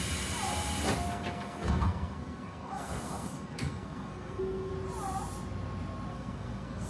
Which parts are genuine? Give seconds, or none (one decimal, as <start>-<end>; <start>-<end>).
0.0-1.1; 4.7-6.1